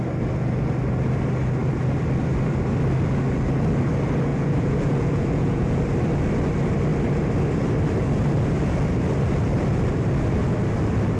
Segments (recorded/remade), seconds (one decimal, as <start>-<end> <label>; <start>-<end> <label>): 0.0-4.3 recorded; 4.3-5.8 remade; 5.8-11.2 recorded